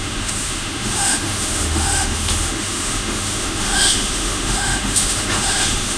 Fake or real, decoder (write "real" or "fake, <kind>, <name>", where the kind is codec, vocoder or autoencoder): fake, autoencoder, DAC-VAE